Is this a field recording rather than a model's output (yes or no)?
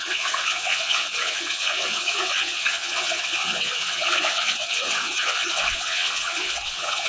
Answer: no